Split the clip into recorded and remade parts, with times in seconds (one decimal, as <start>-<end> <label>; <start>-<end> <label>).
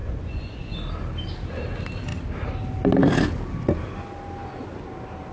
0.0-0.7 remade; 0.7-5.3 recorded